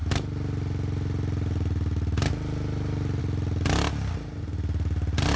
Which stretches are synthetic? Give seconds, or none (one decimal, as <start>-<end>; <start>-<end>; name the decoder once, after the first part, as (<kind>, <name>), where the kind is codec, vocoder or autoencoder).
none